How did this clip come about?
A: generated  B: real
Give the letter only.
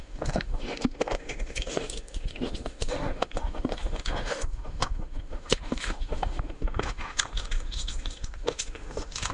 A